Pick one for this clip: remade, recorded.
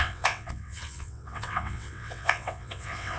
remade